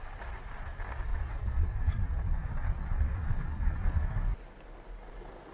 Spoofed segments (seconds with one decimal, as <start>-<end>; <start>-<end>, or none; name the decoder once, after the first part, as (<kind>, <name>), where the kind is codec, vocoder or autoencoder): 1.1-4.1 (vocoder, Vocos)